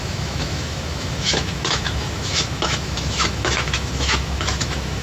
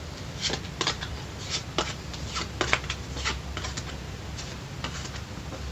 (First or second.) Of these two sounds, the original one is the second